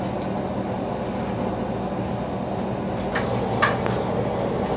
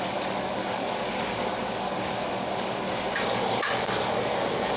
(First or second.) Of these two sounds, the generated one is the second